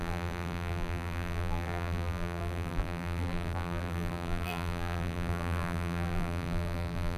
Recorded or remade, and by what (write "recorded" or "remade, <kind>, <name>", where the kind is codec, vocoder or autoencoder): remade, vocoder, BigVGAN v2